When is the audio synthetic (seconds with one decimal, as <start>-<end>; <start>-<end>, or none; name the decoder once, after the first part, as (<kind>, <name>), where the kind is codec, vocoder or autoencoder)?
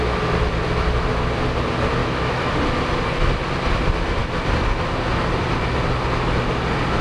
2.0-2.5 (autoencoder, DAC-VAE)